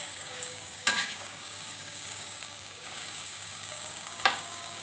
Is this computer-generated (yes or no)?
yes